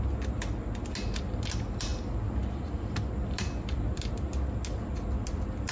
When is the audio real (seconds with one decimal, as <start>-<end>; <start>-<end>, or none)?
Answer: 0.0-5.7